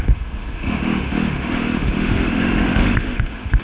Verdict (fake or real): fake